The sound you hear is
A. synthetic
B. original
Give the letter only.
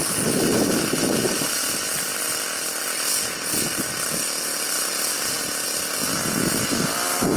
B